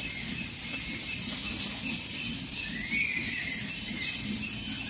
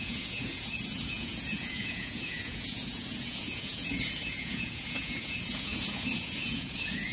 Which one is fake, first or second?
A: second